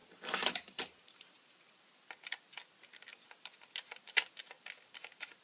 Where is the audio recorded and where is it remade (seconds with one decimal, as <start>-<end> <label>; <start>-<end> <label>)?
0.0-1.7 remade; 1.7-5.4 recorded